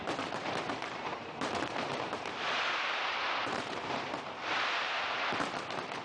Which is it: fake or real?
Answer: fake